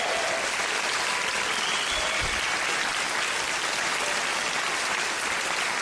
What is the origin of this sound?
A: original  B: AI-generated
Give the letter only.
A